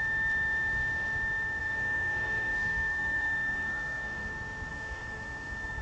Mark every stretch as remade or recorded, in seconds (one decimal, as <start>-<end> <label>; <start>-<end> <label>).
0.0-1.6 recorded; 1.6-4.3 remade; 4.3-4.7 recorded; 4.7-5.8 remade